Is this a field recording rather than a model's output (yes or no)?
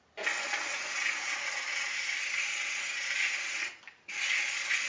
yes